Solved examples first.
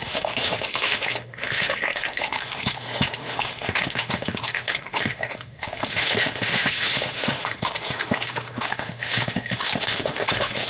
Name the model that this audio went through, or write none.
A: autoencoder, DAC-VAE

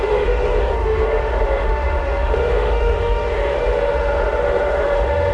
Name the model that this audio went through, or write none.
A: autoencoder, DAC-VAE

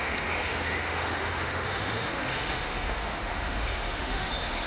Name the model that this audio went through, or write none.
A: autoencoder, DAC-VAE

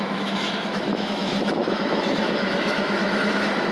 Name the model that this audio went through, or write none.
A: autoencoder, DAC-VAE